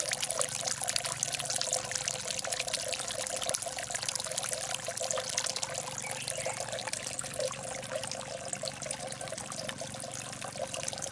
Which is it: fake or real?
real